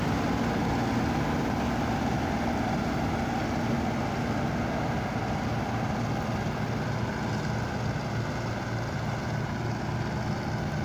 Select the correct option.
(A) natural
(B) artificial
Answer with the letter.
A